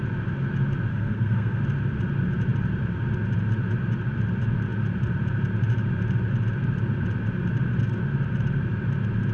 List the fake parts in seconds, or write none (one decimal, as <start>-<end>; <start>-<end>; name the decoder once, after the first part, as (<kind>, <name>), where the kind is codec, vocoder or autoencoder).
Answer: 0.9-1.6 (codec, SNAC)